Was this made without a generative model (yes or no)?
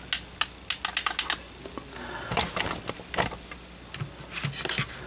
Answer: yes